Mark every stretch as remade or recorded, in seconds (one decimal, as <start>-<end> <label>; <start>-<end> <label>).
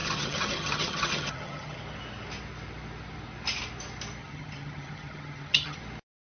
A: 0.0-1.8 remade; 1.8-4.2 recorded; 4.2-5.8 remade; 5.8-6.3 recorded